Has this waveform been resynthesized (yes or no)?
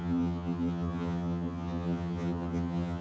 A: yes